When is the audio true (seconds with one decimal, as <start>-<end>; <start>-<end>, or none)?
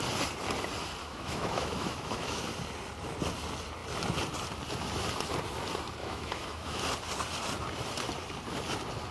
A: 0.0-1.0; 2.5-6.0; 6.8-9.1